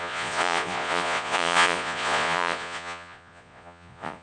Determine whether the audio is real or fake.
fake